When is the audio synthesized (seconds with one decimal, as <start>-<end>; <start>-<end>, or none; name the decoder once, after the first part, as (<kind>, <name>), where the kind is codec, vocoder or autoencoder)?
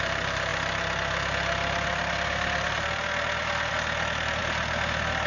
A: none